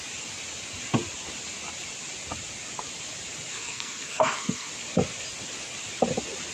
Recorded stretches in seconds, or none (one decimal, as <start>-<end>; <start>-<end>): 0.0-3.5; 4.7-6.5